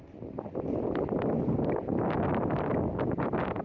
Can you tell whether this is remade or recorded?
recorded